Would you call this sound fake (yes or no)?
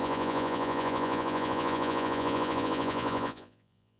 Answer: yes